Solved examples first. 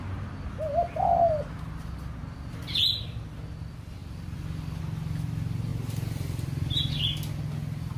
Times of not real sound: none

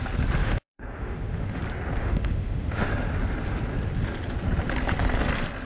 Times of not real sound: 0.4-1.6 (autoencoder, DAC-VAE); 2.0-2.9

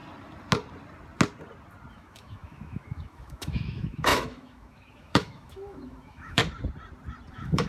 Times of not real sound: 1.9-6.4 (autoencoder, DAC-VAE); 7.3-7.7

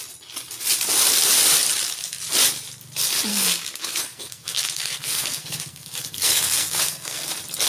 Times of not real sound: 3.3-7.3 (codec, SNAC)

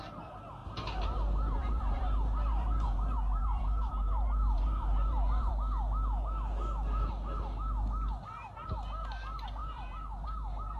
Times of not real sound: 0.6-5.5 (vocoder, BigVGAN v2); 9.6-10.8

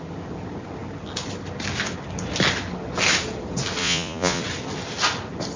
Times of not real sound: 3.8-4.4 (vocoder, Vocos)

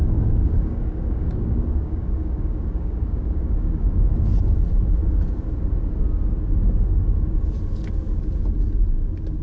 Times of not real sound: 0.0-4.1 (codec, DAC)